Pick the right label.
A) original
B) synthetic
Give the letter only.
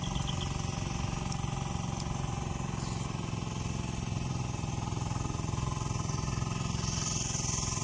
A